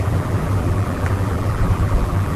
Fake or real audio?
fake